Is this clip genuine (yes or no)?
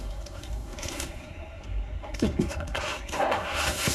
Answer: no